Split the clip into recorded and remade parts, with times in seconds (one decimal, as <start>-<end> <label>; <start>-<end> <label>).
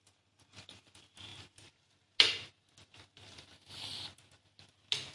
0.0-5.1 recorded